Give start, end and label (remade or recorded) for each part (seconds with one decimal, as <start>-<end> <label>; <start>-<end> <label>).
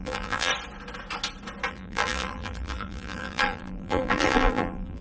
0.0-0.5 remade; 0.5-1.7 recorded; 1.7-5.0 remade